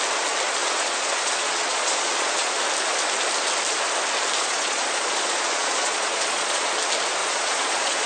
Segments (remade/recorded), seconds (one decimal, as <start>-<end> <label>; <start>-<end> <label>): 0.0-0.6 recorded; 0.6-2.6 remade; 2.6-4.4 recorded; 4.4-6.7 remade; 6.7-7.2 recorded; 7.2-8.1 remade